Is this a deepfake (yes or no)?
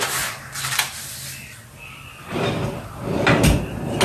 no